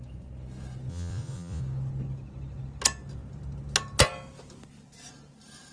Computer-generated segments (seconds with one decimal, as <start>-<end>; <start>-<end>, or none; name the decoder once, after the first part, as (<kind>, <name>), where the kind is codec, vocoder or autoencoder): 0.9-1.6 (vocoder, Vocos)